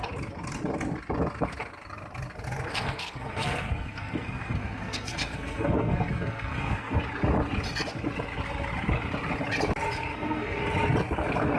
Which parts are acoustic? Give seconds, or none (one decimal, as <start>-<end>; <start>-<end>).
0.0-2.7; 7.0-10.1; 10.6-11.6